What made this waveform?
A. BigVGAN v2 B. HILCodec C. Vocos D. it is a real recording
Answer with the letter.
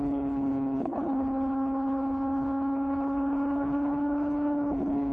B